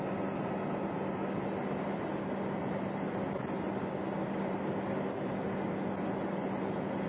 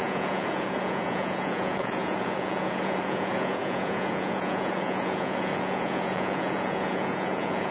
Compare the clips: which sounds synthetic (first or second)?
second